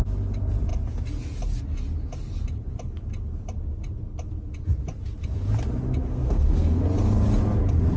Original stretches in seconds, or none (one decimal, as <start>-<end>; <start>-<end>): 0.0-6.0; 6.8-8.0